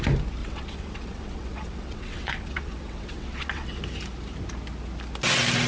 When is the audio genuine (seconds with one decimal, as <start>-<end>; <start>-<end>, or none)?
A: 0.0-0.4; 3.8-5.7